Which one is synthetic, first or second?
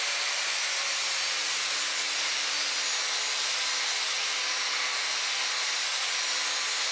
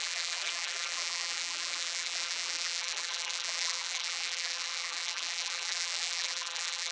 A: second